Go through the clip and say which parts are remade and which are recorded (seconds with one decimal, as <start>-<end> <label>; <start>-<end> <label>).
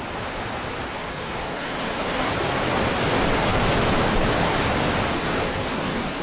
0.0-1.0 recorded; 1.0-2.3 remade; 2.3-5.2 recorded; 5.2-6.2 remade